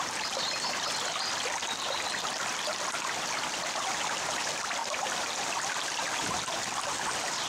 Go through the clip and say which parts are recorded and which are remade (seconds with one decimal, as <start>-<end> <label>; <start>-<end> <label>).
0.0-7.5 recorded